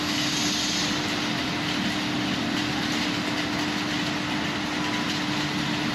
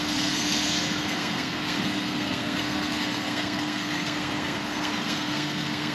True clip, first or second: first